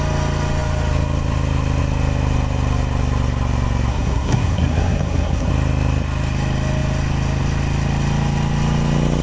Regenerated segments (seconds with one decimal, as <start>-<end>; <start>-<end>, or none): 3.9-5.5